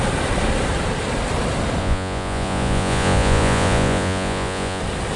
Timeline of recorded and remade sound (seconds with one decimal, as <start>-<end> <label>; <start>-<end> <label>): 0.0-1.8 recorded; 1.8-4.8 remade; 4.8-5.2 recorded